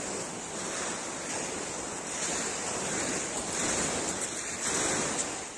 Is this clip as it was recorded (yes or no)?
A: yes